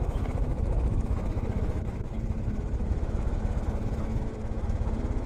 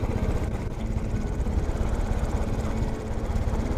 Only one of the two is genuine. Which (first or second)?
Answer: second